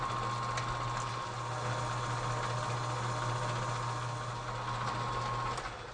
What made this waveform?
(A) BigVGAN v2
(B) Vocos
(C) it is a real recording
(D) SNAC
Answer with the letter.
C